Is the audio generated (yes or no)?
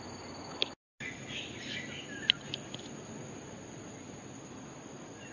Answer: no